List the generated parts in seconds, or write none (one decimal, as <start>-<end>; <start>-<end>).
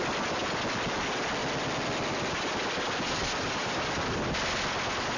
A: none